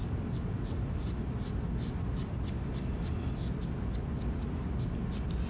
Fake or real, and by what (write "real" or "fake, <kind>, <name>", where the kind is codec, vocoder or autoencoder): real